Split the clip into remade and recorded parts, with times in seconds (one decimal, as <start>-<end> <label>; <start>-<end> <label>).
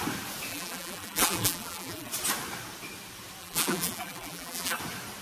0.0-0.5 recorded; 0.5-2.1 remade; 2.1-3.4 recorded; 3.4-4.8 remade; 4.8-5.2 recorded